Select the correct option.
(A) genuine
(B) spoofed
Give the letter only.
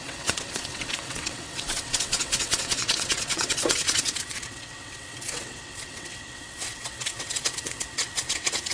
B